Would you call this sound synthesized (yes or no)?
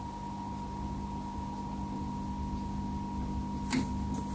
no